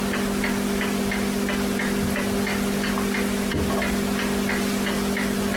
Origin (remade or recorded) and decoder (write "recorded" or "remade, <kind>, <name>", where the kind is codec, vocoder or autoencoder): recorded